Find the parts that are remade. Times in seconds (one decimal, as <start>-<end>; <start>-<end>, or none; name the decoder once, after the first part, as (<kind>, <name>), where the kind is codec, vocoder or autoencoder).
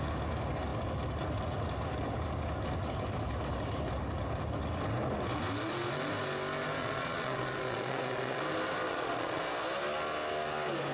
6.8-8.4 (vocoder, Vocos); 8.9-9.4